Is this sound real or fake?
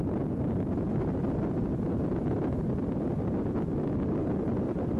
real